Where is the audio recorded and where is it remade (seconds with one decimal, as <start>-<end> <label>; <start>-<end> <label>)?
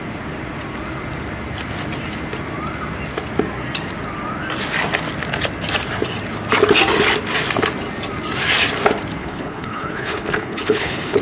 0.0-9.2 recorded; 9.2-11.2 remade